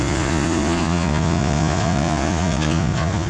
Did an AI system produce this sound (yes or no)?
yes